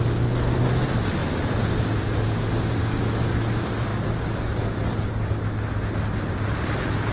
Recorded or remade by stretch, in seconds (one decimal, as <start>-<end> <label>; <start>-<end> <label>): 0.0-2.8 recorded; 2.8-3.3 remade; 3.3-7.1 recorded